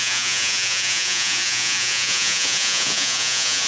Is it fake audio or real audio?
fake